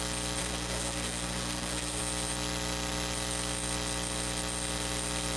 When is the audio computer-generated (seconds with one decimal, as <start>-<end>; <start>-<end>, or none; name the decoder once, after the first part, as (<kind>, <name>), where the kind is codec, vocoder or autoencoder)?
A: 0.4-2.0 (codec, SNAC)